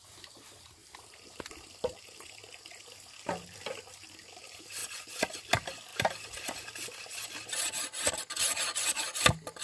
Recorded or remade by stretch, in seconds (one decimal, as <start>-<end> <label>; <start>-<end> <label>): 0.0-0.8 recorded; 0.8-2.3 remade; 2.3-4.8 recorded; 4.8-5.4 remade; 5.4-9.6 recorded